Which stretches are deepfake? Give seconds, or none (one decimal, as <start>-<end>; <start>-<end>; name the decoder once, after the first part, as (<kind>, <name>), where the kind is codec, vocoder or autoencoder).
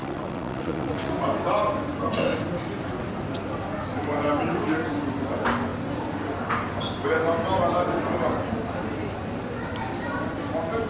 0.0-1.1 (vocoder, WaveNeXt)